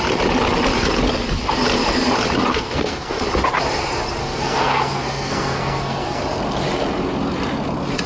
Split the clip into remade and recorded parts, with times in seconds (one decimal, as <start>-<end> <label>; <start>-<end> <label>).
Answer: 0.0-2.5 recorded; 2.5-3.2 remade; 3.2-4.2 recorded; 4.2-6.2 remade; 6.2-8.1 recorded